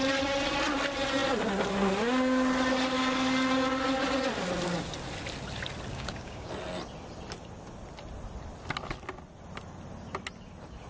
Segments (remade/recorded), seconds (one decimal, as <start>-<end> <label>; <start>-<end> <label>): 0.0-5.9 recorded; 5.9-6.5 remade; 6.5-10.9 recorded

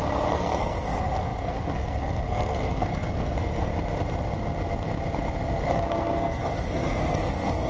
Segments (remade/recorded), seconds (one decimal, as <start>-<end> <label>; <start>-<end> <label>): 0.0-3.7 remade; 3.7-5.7 recorded; 5.7-7.7 remade

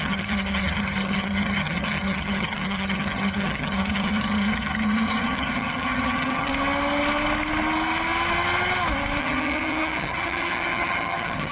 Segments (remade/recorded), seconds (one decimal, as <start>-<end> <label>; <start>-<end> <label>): 0.0-6.5 remade; 6.5-9.2 recorded; 9.2-11.5 remade

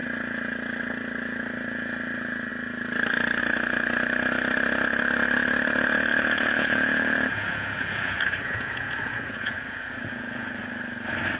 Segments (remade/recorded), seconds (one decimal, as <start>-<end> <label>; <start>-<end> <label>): 0.0-6.1 recorded; 6.1-10.6 remade; 10.6-11.4 recorded